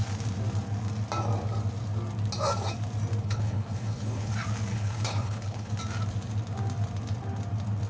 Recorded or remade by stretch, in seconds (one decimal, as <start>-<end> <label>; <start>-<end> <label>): 0.0-3.2 recorded; 3.2-4.3 remade; 4.3-4.7 recorded; 4.7-5.7 remade; 5.7-7.9 recorded